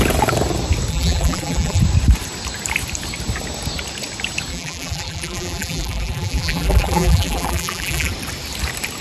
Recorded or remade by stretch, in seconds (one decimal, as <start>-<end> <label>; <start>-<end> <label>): 0.0-0.9 recorded; 0.9-1.8 remade; 1.8-4.5 recorded; 4.5-8.1 remade; 8.1-9.0 recorded